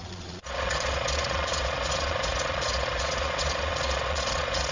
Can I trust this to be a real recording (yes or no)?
no